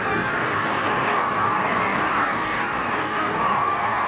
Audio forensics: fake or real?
fake